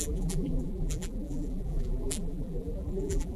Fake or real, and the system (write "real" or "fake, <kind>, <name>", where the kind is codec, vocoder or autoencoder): fake, vocoder, BigVGAN v2